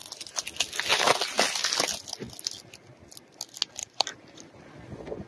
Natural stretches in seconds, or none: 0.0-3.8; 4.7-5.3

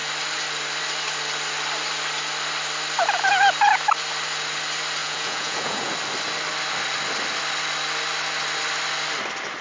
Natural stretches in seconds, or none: 0.0-5.0; 5.9-9.6